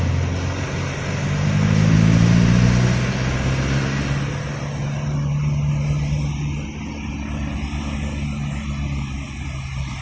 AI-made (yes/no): no